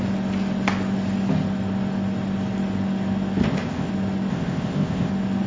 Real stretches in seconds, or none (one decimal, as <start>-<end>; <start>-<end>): 0.0-3.4; 3.9-4.3; 5.1-5.5